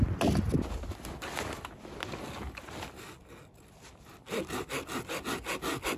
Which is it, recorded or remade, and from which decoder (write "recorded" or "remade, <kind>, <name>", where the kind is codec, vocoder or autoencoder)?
recorded